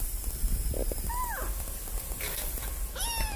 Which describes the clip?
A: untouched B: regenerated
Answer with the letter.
A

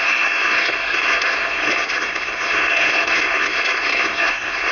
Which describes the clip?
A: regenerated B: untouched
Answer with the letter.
A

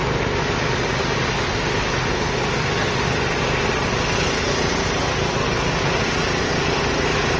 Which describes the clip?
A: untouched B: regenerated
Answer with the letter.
A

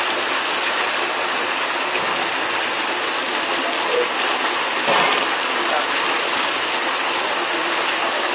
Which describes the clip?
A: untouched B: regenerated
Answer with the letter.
A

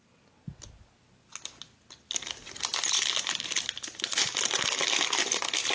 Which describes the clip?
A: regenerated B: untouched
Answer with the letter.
B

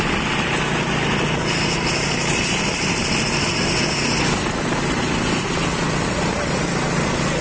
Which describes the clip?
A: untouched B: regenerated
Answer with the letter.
A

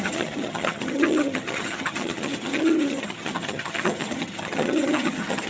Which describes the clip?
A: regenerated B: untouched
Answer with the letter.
A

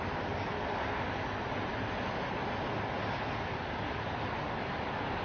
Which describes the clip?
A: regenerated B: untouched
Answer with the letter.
B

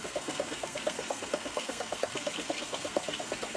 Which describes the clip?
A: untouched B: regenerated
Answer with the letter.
B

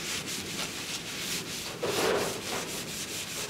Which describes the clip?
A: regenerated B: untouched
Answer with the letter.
B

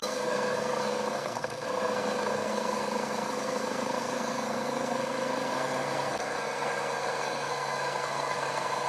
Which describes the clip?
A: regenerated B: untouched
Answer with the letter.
A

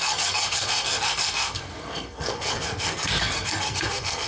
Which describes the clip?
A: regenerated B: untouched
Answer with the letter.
A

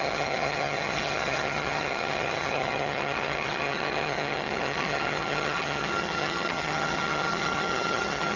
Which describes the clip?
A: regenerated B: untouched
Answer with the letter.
A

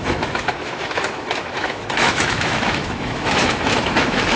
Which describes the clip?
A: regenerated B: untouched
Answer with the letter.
A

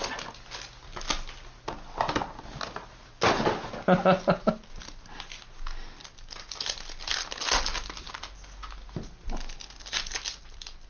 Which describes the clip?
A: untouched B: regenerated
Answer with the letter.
A